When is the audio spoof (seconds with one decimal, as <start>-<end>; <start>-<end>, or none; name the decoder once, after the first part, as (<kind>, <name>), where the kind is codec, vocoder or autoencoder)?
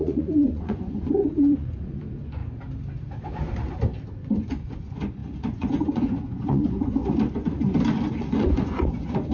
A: 0.0-2.4 (vocoder, Vocos); 4.1-7.0; 8.1-9.3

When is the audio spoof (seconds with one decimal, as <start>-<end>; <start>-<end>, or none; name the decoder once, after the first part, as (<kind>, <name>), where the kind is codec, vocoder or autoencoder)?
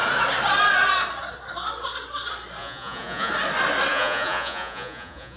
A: 2.6-3.3 (vocoder, Vocos); 3.9-5.4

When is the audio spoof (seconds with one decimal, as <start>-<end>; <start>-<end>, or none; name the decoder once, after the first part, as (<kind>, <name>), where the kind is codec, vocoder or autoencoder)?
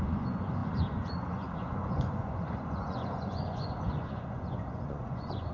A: 0.0-5.5 (vocoder, Vocos)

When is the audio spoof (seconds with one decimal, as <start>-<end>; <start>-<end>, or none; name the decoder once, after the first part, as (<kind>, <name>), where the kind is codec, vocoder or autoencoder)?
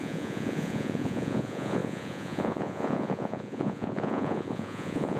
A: 0.0-5.2 (vocoder, Vocos)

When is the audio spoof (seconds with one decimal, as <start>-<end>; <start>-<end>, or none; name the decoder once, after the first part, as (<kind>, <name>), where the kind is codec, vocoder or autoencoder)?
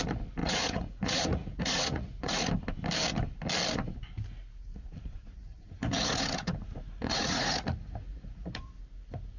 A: 0.4-2.5 (vocoder, Vocos); 4.5-8.7